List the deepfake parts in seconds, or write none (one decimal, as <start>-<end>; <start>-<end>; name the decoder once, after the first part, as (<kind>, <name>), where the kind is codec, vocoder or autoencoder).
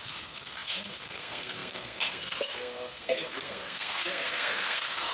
0.0-5.1 (codec, SNAC)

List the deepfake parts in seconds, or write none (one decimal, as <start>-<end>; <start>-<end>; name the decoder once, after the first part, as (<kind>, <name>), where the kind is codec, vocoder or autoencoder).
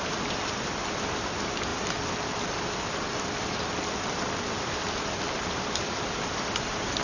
none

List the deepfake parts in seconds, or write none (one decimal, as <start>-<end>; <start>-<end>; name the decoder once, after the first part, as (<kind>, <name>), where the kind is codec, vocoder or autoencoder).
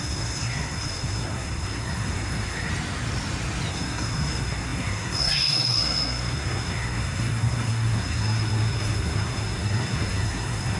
0.0-2.7 (codec, SNAC); 3.7-10.8